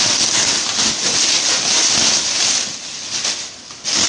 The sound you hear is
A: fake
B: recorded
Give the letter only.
B